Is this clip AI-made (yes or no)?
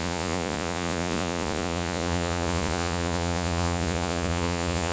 yes